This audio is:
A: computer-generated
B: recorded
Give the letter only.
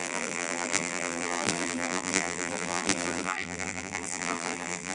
A